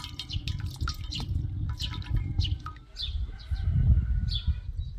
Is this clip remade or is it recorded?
recorded